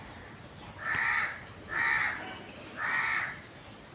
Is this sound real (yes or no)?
yes